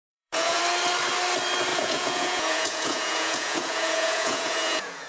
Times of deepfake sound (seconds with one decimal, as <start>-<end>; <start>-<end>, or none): 0.0-0.6; 1.7-5.1